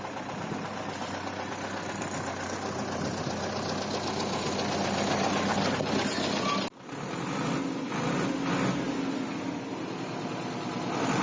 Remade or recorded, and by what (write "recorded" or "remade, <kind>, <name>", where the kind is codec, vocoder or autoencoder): recorded